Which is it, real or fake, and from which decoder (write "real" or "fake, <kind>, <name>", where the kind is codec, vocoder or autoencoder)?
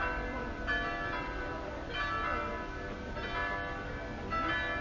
real